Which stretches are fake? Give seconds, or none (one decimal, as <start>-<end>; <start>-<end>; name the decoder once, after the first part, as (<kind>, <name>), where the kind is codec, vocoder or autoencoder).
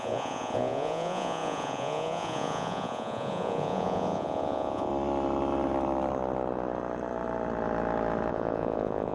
0.0-4.9 (vocoder, Vocos); 8.3-9.1